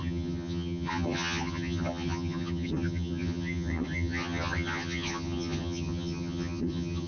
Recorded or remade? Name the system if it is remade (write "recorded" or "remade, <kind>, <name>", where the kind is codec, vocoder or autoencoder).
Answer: remade, vocoder, HiFi-GAN